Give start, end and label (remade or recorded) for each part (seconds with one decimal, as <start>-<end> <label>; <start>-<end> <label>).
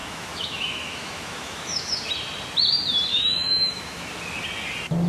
0.0-2.0 remade; 2.0-3.1 recorded; 3.1-4.1 remade; 4.1-5.1 recorded